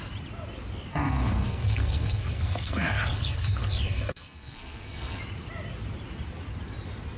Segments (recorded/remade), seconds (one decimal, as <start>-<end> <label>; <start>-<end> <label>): 0.0-0.9 recorded; 0.9-5.2 remade; 5.2-7.2 recorded